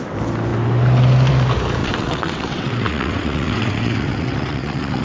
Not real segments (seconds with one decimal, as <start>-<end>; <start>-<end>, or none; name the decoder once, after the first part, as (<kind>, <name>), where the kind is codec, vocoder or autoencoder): 1.8-5.0 (vocoder, WaveNeXt)